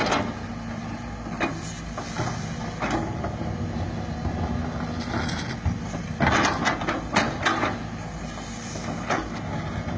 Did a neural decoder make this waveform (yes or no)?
no